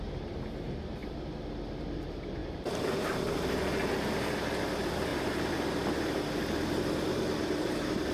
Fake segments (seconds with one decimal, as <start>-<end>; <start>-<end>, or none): 2.4-3.4; 5.1-5.7

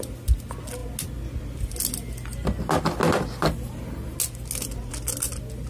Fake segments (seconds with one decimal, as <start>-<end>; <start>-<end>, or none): none

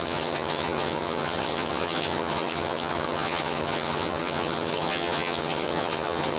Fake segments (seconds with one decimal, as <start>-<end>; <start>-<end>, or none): 0.0-6.4

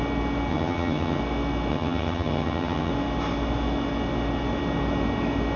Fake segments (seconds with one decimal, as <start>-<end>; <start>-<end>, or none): 0.5-1.2; 1.7-2.9

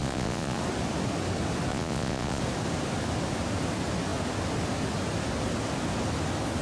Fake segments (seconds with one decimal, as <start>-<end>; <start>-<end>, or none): 0.0-0.6; 1.7-2.4

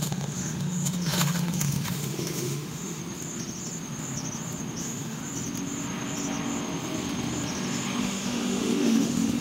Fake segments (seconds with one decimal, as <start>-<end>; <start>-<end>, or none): 0.0-3.0; 4.8-5.2; 8.0-9.4